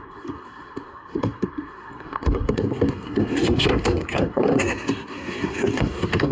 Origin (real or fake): fake